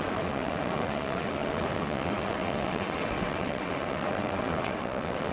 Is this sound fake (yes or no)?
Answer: yes